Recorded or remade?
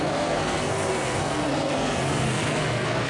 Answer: remade